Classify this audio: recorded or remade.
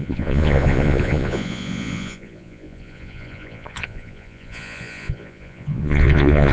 remade